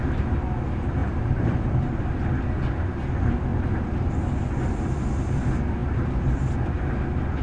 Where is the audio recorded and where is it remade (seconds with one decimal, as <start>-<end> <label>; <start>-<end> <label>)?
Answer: 0.0-1.0 recorded; 1.0-2.0 remade; 2.0-7.4 recorded